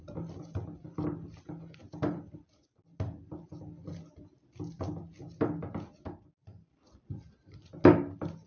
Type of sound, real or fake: real